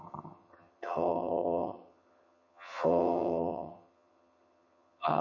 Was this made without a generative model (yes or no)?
no